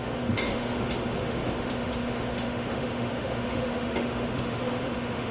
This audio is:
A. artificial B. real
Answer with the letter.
A